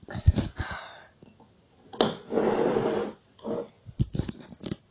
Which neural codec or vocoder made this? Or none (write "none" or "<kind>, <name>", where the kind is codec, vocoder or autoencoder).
none